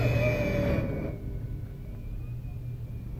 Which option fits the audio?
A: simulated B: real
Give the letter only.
B